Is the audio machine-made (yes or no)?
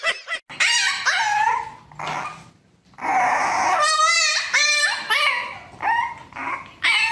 no